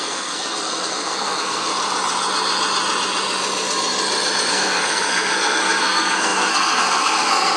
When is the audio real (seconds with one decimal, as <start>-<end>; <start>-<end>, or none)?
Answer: 1.7-4.5